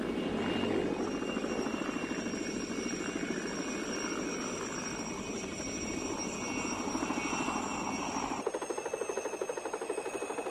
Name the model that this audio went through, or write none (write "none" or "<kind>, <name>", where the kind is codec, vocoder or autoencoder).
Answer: none